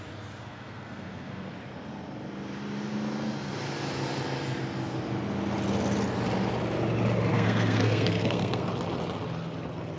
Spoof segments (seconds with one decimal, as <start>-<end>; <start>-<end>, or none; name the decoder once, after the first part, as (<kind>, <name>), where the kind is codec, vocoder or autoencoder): 0.4-1.5 (codec, SNAC); 7.3-8.7